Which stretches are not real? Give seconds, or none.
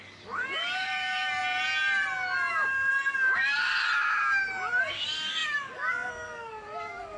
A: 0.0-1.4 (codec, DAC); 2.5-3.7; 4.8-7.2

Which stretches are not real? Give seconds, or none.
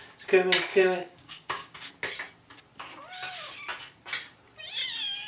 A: 0.7-1.9 (codec, DAC)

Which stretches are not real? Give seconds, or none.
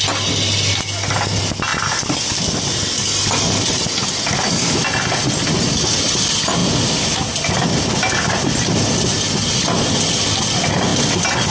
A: none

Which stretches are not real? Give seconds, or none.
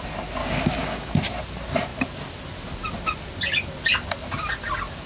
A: 0.4-1.1 (codec, DAC)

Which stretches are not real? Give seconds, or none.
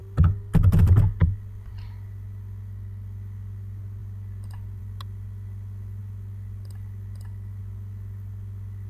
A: none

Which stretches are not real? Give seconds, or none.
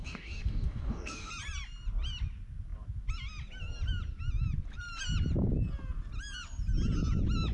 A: 0.0-1.3 (codec, DAC)